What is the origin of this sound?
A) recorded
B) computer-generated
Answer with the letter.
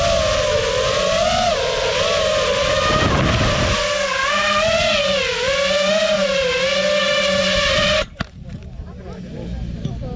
A